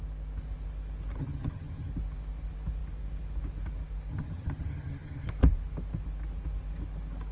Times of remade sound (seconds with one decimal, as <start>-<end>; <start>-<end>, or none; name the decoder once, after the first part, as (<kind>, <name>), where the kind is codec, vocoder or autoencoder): 1.2-1.9 (vocoder, HiFi-GAN); 4.1-5.3